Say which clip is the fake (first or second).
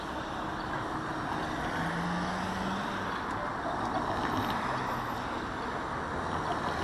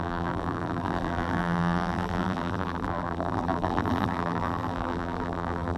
second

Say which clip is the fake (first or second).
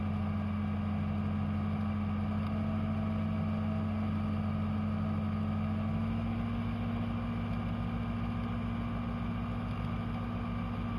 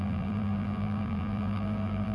second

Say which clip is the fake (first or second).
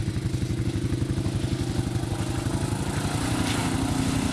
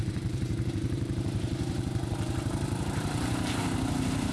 second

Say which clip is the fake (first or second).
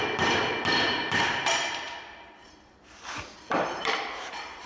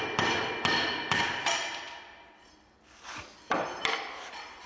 first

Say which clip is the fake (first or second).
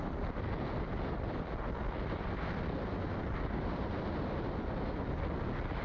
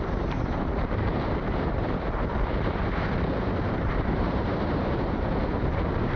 second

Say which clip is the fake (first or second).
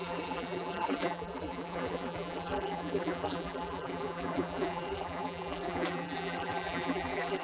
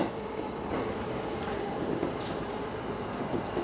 first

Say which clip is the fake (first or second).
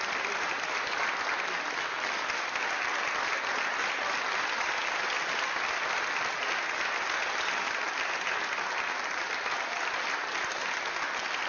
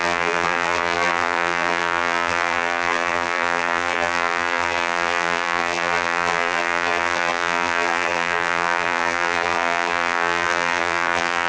second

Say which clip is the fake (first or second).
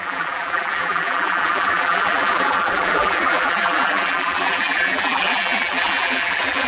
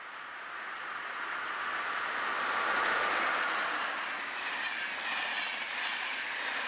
first